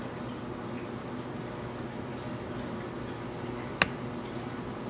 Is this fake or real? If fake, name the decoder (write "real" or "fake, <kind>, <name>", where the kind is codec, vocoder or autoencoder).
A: real